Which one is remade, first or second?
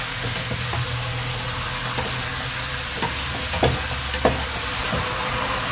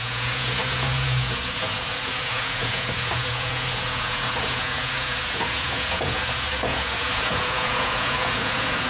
second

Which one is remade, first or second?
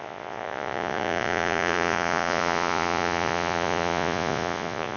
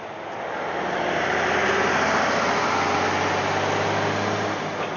first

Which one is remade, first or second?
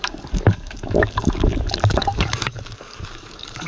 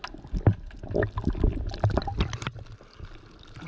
first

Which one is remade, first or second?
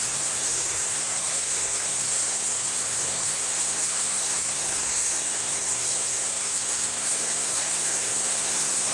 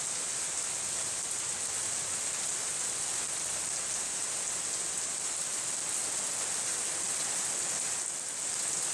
first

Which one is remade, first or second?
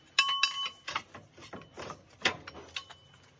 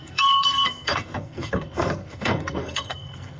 second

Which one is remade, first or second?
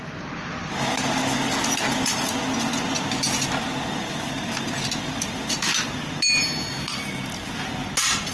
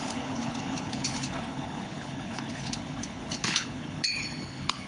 second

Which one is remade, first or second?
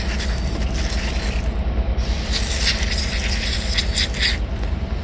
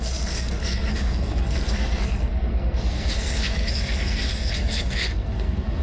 second